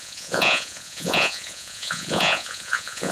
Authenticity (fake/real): fake